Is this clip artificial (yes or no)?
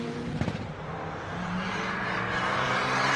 yes